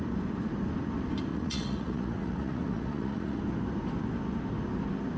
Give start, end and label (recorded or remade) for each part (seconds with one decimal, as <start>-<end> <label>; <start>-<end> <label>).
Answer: 0.0-1.3 recorded; 1.3-3.4 remade; 3.4-5.2 recorded